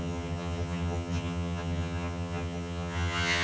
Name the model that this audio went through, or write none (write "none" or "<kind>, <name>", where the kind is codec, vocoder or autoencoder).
vocoder, HiFi-GAN